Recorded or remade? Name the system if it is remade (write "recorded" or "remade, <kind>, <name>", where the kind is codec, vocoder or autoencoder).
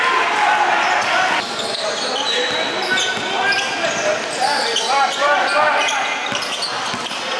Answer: recorded